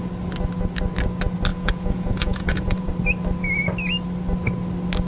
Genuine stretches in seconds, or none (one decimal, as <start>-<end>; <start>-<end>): 0.0-1.5; 2.9-5.1